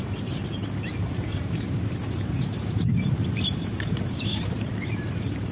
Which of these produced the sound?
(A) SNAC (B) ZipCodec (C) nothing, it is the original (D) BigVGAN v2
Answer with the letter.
D